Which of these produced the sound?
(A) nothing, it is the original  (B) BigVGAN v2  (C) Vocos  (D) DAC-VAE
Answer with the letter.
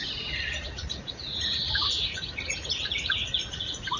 C